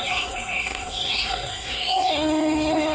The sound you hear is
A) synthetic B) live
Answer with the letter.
A